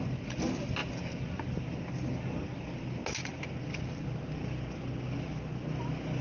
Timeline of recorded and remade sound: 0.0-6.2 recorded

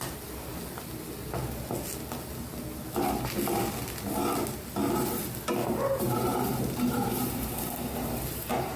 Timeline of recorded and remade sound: 0.0-5.6 recorded; 5.6-8.8 remade

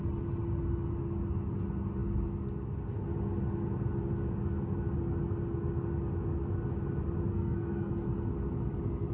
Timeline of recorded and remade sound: 0.0-7.3 recorded; 7.3-7.9 remade; 7.9-9.1 recorded

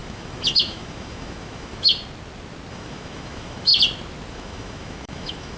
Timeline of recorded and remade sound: 0.0-1.9 remade; 1.9-2.7 recorded; 2.7-3.7 remade; 3.7-4.3 recorded; 4.3-5.6 remade

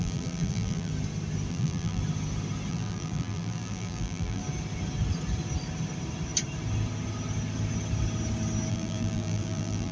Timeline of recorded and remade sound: 0.0-0.9 remade; 0.9-1.5 recorded; 1.5-2.0 remade; 2.0-2.7 recorded; 2.7-4.4 remade; 4.4-8.7 recorded; 8.7-9.9 remade

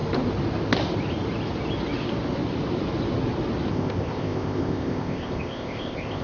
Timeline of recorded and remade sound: 0.0-3.7 recorded; 3.7-6.2 remade